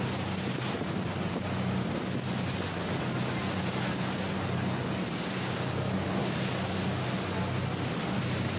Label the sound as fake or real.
real